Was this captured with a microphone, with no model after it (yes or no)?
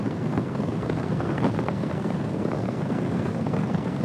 no